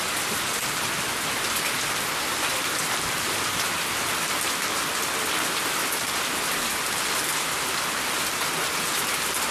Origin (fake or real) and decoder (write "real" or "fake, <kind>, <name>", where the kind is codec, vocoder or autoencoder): real